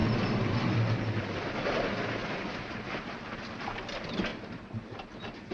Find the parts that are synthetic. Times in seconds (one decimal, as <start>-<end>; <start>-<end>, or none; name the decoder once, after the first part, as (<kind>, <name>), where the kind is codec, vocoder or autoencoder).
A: 4.3-5.5 (vocoder, BigVGAN v2)